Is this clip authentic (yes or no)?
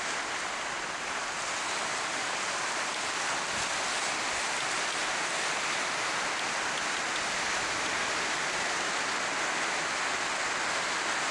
yes